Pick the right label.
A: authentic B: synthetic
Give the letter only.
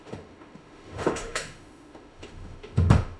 B